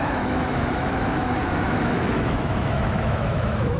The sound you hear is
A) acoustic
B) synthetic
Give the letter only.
B